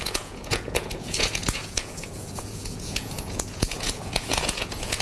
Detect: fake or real fake